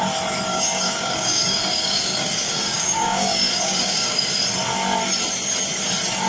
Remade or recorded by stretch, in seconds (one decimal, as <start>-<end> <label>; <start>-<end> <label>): 0.0-0.5 recorded; 0.5-4.3 remade; 4.3-6.3 recorded